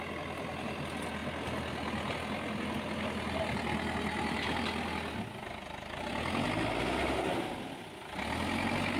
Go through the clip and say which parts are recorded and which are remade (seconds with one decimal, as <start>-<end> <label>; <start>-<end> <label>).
0.0-9.0 recorded